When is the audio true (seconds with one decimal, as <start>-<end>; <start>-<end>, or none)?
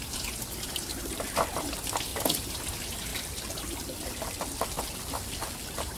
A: 0.0-1.0; 1.5-3.1